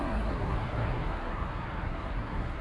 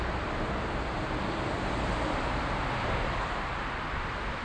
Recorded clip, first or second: second